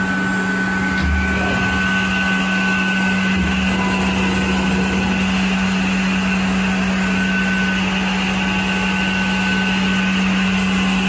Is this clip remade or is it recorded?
recorded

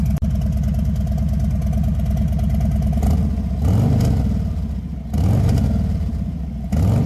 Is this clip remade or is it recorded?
recorded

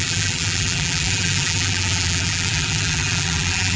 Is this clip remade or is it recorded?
remade